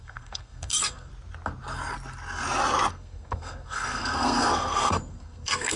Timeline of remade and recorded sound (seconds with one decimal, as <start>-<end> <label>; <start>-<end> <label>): 0.0-1.1 remade; 1.1-2.9 recorded; 2.9-5.8 remade